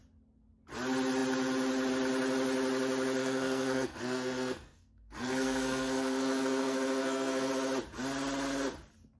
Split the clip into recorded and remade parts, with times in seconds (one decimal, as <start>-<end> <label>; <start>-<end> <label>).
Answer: 0.0-3.2 recorded; 3.2-7.5 remade; 7.5-9.2 recorded